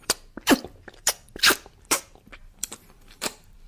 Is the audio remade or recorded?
remade